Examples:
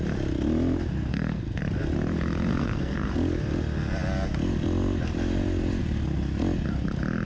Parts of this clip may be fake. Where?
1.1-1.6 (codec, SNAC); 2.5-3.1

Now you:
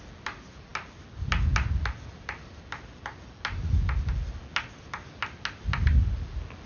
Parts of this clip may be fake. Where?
none